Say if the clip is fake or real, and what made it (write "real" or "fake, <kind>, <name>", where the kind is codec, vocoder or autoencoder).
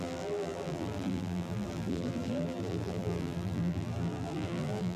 fake, vocoder, BigVGAN v2